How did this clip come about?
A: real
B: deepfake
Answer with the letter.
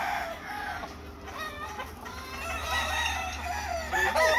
A